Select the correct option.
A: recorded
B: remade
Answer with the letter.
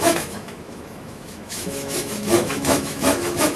B